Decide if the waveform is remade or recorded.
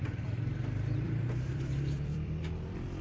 remade